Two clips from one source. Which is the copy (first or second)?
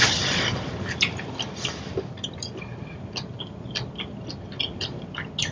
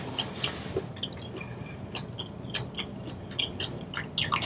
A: first